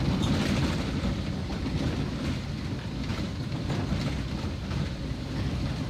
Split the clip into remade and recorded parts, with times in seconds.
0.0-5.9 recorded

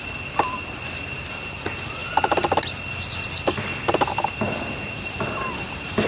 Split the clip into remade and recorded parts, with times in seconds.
0.0-6.1 recorded